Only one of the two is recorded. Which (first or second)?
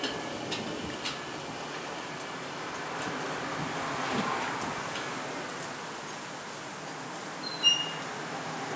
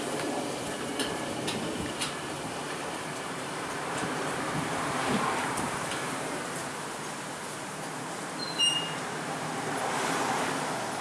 first